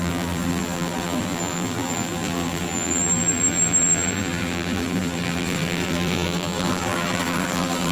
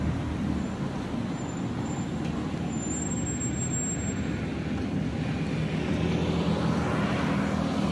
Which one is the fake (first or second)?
first